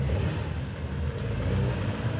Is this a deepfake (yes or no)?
no